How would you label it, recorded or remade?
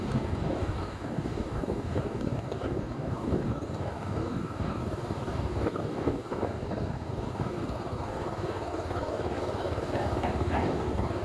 remade